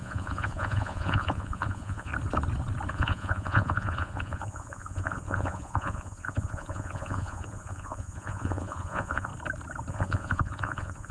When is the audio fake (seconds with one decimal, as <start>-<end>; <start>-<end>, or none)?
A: 0.0-2.1; 2.9-9.3; 9.9-11.1